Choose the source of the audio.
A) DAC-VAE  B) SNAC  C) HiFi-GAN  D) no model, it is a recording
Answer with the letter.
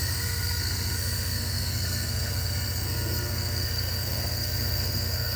B